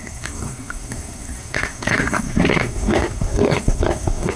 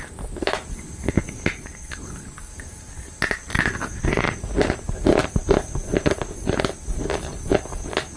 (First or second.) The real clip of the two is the second